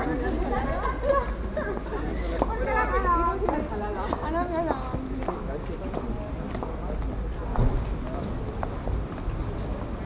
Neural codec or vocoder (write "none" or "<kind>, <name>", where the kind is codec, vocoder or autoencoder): none